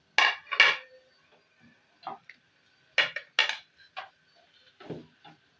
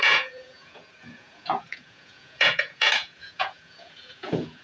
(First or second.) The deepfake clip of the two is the second